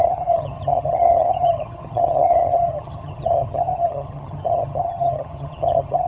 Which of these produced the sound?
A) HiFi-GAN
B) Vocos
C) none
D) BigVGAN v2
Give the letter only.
A